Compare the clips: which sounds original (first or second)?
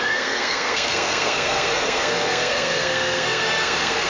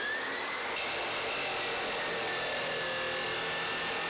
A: second